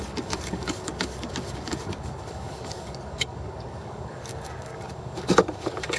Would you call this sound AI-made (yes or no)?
yes